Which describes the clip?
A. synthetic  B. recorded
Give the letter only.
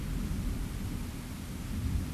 B